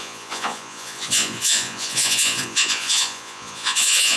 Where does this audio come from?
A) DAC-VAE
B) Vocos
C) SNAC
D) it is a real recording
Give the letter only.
B